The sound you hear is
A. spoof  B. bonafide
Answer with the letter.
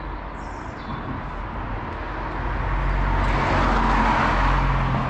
B